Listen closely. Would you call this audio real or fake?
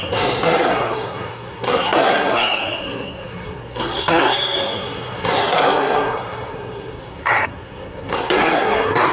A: fake